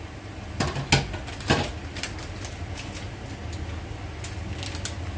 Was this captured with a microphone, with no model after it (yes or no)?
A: yes